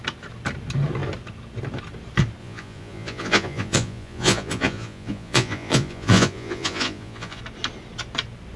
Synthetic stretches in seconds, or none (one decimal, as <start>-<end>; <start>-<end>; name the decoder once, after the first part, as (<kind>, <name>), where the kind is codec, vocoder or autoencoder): 2.4-7.4 (vocoder, Vocos)